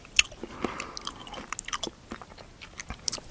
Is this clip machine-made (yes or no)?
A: no